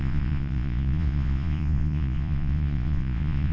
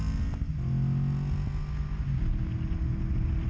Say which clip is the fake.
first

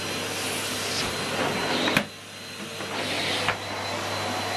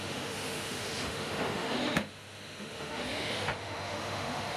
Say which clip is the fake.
second